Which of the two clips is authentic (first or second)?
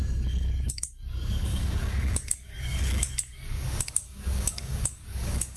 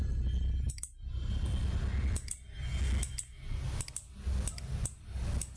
second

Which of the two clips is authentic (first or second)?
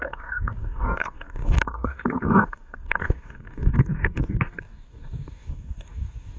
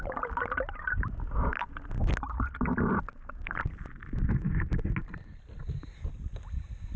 second